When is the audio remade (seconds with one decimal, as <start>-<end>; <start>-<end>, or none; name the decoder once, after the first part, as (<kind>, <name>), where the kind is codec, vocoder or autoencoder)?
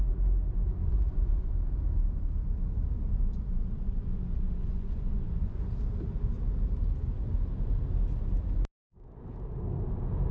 0.8-1.5 (vocoder, Vocos); 4.6-5.6